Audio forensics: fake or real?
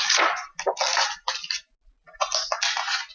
real